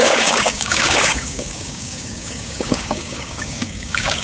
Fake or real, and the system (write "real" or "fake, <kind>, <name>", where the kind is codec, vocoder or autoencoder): fake, codec, DAC